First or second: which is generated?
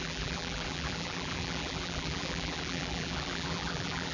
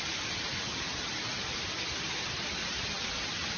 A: first